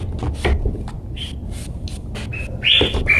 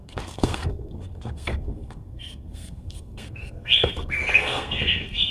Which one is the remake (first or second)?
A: second